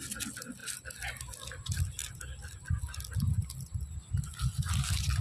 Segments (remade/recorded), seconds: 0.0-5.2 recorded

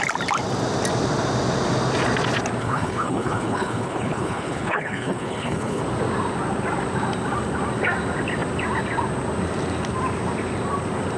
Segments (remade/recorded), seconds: 0.0-2.6 recorded; 2.6-5.8 remade; 5.8-11.2 recorded

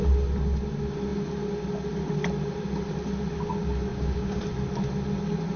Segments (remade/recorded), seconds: 0.0-3.9 recorded; 3.9-4.4 remade; 4.4-5.6 recorded

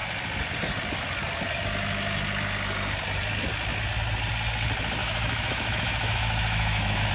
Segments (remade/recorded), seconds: 0.0-5.0 recorded; 5.0-7.1 remade

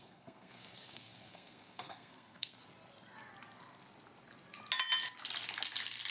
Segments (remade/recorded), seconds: 0.0-2.6 remade; 2.6-6.1 recorded